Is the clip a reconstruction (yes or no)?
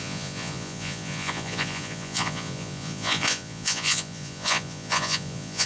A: yes